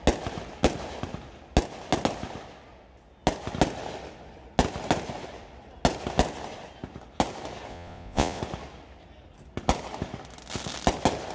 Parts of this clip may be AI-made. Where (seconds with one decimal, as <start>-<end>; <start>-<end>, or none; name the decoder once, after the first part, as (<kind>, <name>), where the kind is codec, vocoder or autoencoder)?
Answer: 7.7-8.4 (vocoder, Vocos)